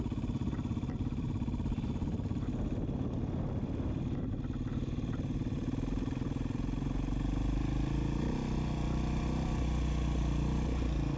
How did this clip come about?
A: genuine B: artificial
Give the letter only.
A